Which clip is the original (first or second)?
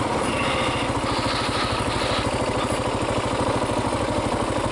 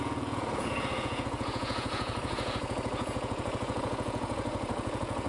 first